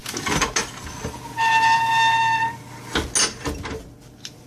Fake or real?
real